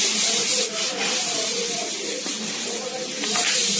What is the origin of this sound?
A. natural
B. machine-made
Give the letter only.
A